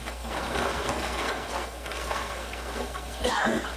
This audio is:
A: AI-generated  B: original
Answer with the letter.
A